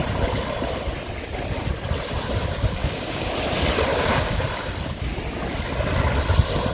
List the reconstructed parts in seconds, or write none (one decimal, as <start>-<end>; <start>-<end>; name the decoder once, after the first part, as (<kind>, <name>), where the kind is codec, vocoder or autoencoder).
2.8-3.3 (codec, DAC); 3.9-4.4